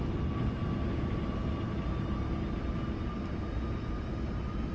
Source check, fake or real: real